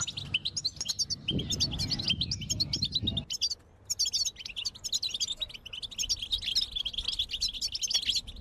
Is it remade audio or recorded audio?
recorded